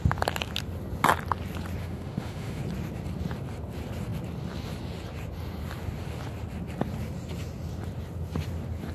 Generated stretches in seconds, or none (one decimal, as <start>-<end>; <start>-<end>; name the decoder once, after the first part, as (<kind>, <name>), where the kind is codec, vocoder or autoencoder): 1.8-2.6 (autoencoder, DAC-VAE)